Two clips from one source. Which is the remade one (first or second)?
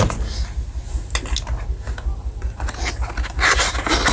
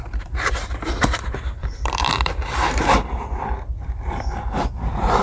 second